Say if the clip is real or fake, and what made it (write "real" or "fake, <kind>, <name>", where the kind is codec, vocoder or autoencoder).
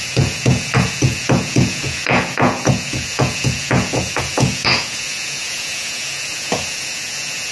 fake, vocoder, Vocos